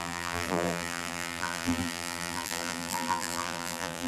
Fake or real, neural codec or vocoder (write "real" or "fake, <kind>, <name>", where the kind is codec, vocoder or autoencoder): fake, vocoder, BigVGAN v2